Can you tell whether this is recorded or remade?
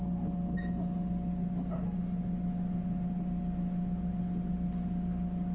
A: recorded